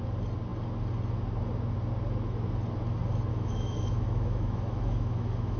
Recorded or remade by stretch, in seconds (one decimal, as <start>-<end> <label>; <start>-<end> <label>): 0.0-3.3 recorded; 3.3-5.6 remade